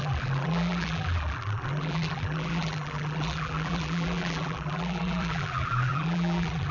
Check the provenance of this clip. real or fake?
fake